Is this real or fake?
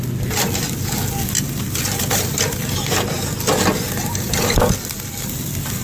real